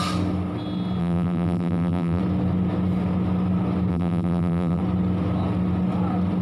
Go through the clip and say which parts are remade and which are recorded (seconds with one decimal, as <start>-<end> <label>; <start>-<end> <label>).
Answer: 0.0-1.0 recorded; 1.0-2.2 remade; 2.2-3.9 recorded; 3.9-4.8 remade; 4.8-6.4 recorded